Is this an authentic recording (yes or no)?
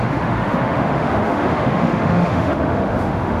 no